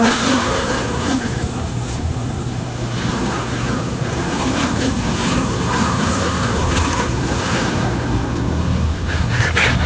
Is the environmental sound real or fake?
fake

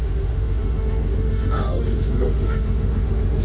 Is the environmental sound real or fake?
fake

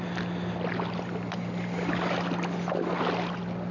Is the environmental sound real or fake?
real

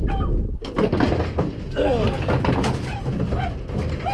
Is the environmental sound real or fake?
real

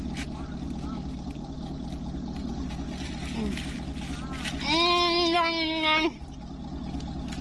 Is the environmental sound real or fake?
real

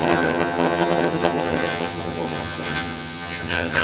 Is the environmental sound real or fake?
fake